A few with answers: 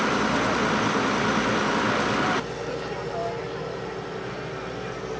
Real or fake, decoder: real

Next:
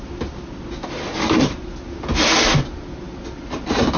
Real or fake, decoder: real